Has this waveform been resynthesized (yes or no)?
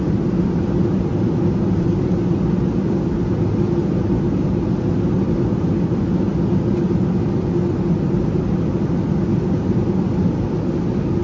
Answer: no